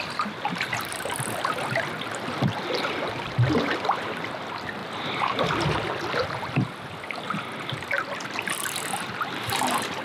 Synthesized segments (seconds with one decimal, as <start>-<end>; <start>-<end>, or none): none